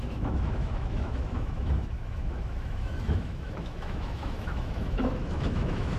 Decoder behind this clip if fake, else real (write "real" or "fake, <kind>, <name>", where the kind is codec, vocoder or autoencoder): fake, autoencoder, DAC-VAE